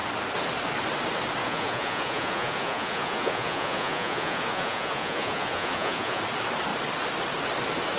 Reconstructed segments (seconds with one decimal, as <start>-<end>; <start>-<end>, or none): 1.4-6.2